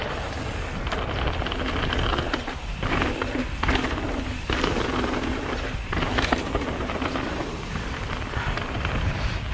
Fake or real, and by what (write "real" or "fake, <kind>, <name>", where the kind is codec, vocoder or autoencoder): real